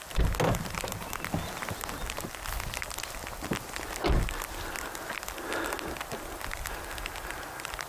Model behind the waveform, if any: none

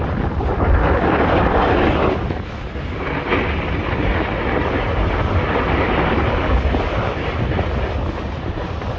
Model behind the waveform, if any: none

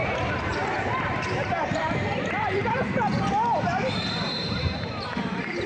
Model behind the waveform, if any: vocoder, BigVGAN v2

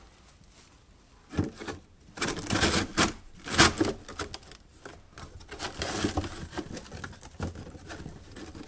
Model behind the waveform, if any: none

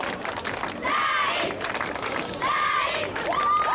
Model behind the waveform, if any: none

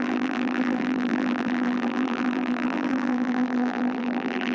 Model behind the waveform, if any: vocoder, BigVGAN v2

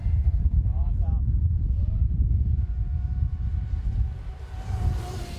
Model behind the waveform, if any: vocoder, BigVGAN v2